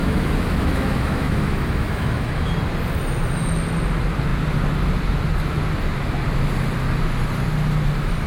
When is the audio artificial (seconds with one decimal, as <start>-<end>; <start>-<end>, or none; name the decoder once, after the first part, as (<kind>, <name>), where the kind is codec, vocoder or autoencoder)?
0.0-2.5 (autoencoder, DAC-VAE)